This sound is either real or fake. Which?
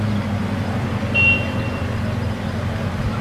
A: real